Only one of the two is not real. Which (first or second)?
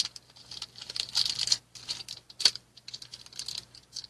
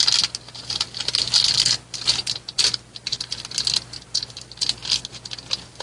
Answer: first